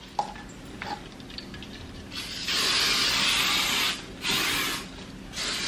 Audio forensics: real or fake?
real